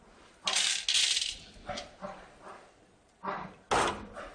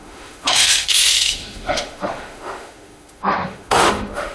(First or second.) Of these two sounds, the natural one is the first